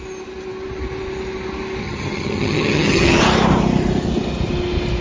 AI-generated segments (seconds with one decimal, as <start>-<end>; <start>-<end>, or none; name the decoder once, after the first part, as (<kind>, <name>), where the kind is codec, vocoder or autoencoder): 1.8-3.2 (vocoder, HiFi-GAN)